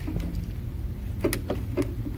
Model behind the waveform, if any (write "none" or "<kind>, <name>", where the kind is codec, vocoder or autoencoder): none